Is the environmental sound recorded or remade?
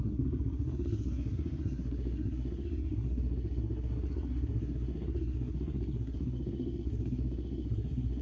remade